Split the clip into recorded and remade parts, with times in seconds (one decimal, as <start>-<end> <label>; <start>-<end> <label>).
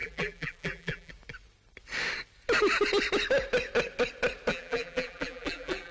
0.0-1.1 remade; 1.1-4.5 recorded; 4.5-5.9 remade